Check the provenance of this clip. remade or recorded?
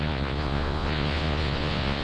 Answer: remade